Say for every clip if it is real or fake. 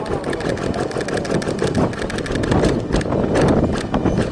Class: real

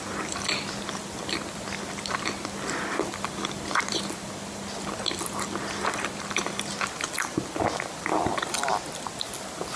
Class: real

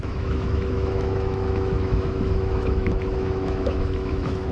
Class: fake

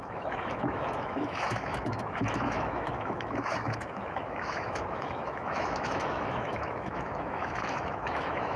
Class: fake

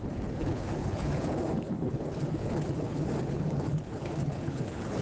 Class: fake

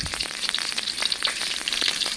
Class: fake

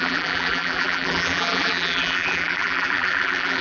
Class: fake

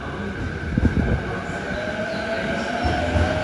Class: real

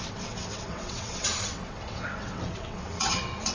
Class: fake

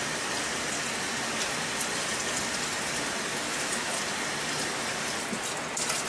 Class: real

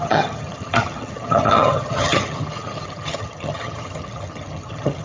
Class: fake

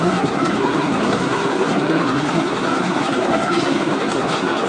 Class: fake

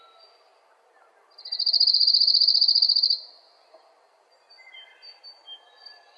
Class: fake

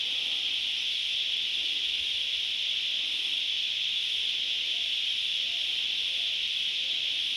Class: real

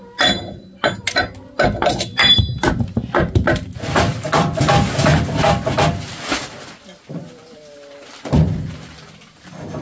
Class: real